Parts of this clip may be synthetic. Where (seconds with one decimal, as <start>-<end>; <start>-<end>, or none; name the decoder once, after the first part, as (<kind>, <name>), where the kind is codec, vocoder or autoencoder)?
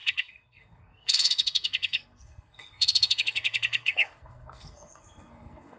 0.0-5.8 (codec, SNAC)